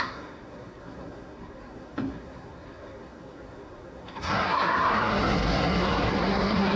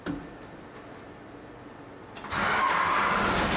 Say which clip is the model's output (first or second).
first